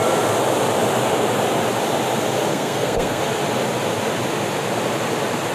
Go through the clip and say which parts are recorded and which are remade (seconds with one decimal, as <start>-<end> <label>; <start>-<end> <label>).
0.0-2.5 recorded; 2.5-3.2 remade; 3.2-5.5 recorded